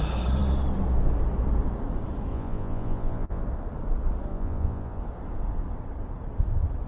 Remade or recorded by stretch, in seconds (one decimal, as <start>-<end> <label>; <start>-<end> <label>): 0.0-2.3 recorded; 2.3-3.4 remade; 3.4-4.3 recorded; 4.3-5.0 remade; 5.0-6.9 recorded